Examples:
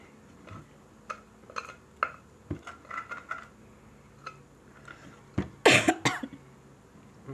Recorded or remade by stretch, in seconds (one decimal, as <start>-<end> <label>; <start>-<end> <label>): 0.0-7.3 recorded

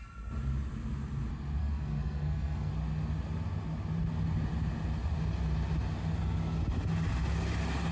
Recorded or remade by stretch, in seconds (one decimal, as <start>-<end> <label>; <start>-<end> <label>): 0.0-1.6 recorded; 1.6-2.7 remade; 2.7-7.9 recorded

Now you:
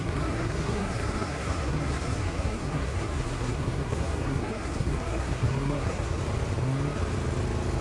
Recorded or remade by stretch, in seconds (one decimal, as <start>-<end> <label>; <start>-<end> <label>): 0.0-6.2 remade; 6.2-7.8 recorded

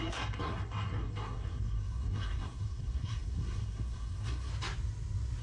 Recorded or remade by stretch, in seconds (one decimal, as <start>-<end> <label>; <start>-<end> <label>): 0.0-4.5 remade; 4.5-5.4 recorded